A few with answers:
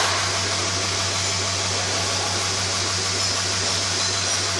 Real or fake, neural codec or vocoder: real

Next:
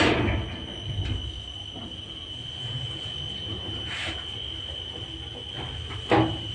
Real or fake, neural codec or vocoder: real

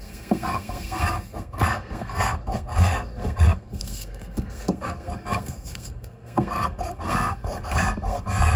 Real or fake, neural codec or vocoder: fake, codec, SNAC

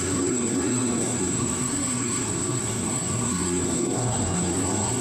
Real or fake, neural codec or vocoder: fake, codec, SNAC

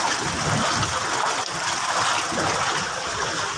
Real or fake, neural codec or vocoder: real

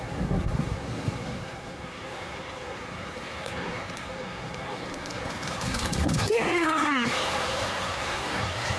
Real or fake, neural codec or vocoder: fake, codec, SNAC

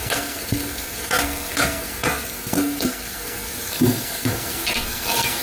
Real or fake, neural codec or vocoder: fake, codec, SNAC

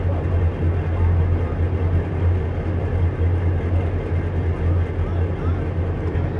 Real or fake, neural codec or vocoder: real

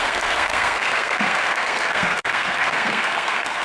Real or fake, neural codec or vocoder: fake, codec, SNAC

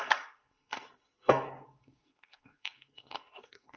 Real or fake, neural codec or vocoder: fake, codec, SNAC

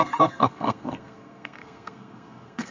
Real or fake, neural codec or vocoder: fake, codec, SNAC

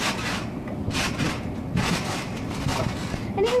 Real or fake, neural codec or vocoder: real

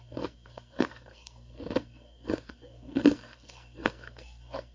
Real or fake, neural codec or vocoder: fake, codec, SNAC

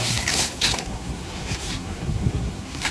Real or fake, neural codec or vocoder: fake, codec, SNAC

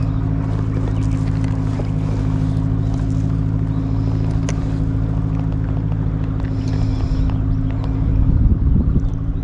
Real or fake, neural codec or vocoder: real